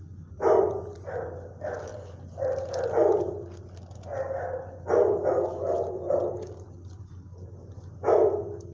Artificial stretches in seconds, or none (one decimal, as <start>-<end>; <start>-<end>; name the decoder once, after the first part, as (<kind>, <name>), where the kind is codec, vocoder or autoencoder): none